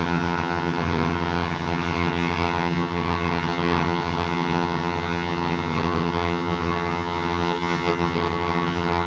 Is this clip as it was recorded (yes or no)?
no